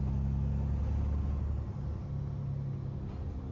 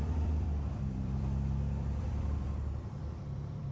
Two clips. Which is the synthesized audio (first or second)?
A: second